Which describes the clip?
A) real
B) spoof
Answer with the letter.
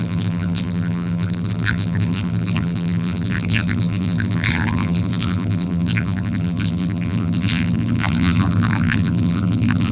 B